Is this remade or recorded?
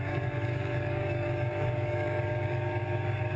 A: remade